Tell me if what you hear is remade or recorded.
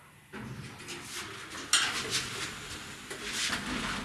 recorded